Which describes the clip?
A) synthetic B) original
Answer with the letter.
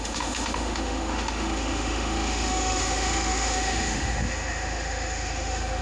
A